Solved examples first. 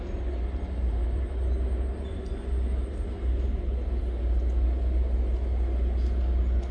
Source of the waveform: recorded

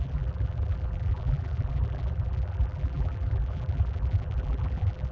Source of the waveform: remade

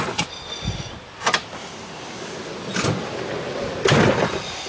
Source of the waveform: recorded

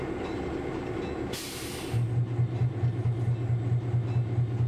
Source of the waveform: recorded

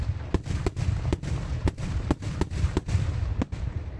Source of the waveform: remade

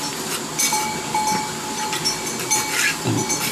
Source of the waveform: recorded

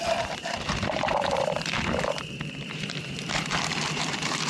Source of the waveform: remade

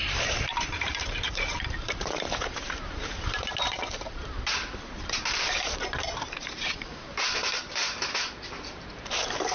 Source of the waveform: remade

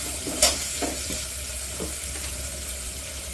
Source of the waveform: remade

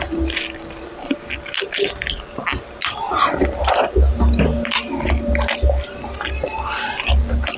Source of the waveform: remade